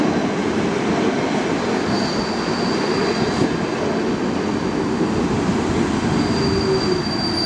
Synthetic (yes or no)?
no